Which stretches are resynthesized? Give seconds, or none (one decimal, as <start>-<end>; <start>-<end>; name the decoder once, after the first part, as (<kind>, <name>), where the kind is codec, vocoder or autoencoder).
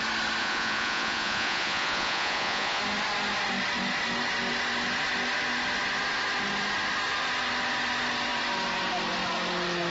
0.4-2.8 (vocoder, Vocos)